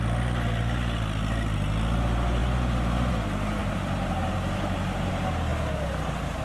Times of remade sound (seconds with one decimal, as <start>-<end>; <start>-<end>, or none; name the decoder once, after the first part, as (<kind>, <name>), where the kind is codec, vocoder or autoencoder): 3.6-5.1 (vocoder, BigVGAN v2)

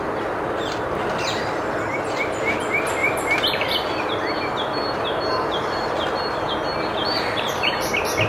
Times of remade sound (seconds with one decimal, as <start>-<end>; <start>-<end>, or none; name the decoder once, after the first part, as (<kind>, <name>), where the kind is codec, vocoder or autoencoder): 3.0-4.0 (vocoder, BigVGAN v2); 7.0-7.7

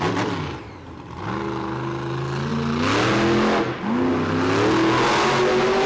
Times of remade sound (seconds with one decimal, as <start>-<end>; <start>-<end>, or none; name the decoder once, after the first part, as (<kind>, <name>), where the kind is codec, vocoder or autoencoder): none